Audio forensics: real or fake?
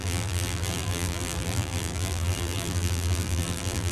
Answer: fake